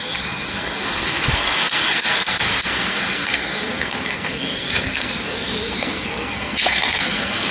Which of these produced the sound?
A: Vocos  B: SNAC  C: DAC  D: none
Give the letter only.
B